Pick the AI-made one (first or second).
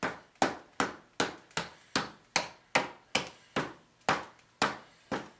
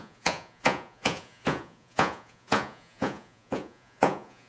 second